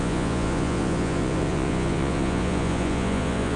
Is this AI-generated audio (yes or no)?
yes